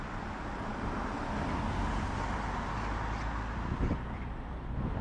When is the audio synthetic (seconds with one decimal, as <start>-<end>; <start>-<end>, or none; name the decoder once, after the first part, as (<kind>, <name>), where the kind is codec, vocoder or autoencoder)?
none